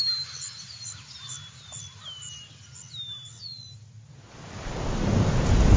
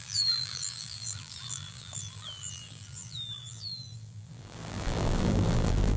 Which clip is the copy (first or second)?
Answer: second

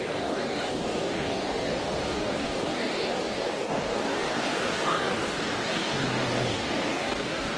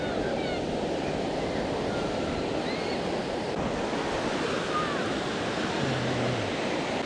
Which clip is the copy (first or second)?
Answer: first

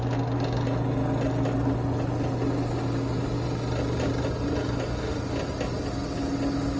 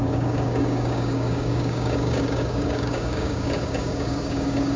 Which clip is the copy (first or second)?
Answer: second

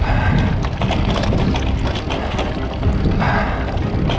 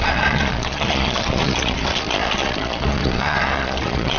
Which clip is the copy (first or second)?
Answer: second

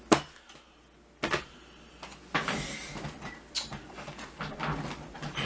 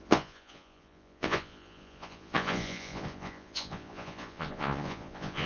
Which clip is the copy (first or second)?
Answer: second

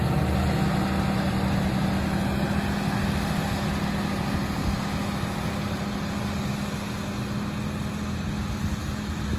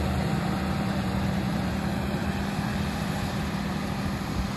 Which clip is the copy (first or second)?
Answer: second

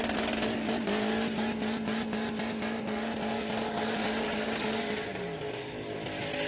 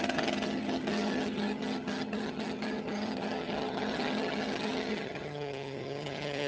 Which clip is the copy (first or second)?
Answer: second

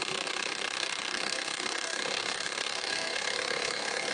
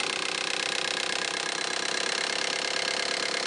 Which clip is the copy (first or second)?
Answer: first